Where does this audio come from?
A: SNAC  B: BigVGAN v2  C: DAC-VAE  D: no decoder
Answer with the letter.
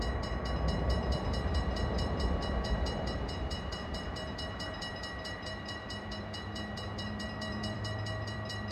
B